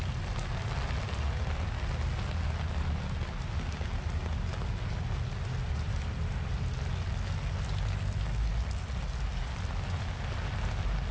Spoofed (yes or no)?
no